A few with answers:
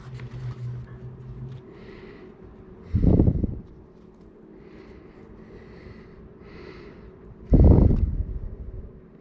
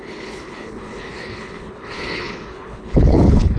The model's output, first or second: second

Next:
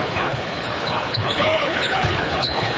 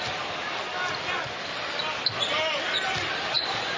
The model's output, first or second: first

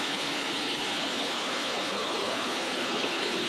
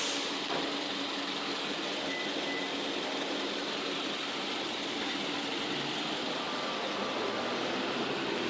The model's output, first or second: first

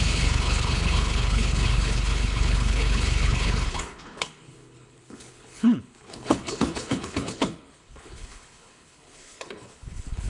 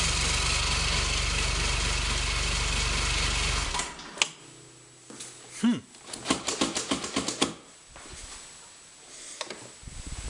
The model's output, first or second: first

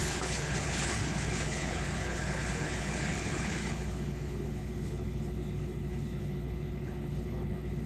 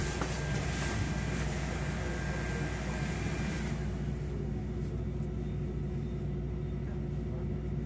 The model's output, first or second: first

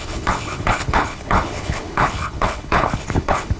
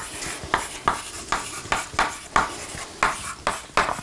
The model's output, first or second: first